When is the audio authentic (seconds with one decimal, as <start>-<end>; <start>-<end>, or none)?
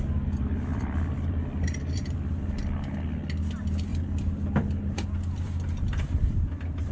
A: 0.0-0.7; 2.5-3.9